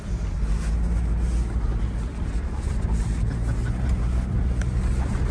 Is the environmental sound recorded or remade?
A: recorded